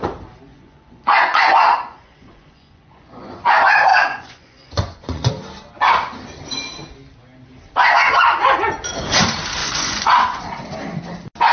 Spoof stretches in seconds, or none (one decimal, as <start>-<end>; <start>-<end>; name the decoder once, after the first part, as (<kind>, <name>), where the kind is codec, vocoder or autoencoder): 0.5-3.5 (vocoder, Vocos); 3.9-5.3; 9.6-10.4